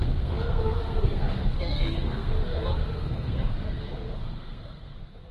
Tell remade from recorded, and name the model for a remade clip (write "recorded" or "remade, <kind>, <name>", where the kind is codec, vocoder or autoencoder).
remade, codec, SNAC